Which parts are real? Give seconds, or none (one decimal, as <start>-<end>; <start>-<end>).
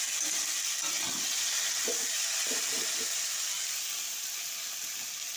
0.0-5.4